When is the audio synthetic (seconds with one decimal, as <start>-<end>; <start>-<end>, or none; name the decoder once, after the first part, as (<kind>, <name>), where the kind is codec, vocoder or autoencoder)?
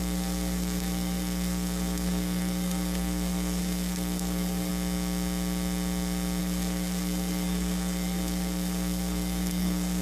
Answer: 0.0-4.7 (codec, SNAC); 6.4-10.0